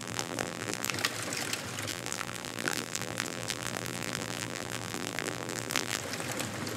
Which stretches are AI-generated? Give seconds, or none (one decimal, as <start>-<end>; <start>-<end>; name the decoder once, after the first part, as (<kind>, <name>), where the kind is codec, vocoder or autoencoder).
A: 0.0-0.9 (vocoder, BigVGAN v2); 1.9-6.0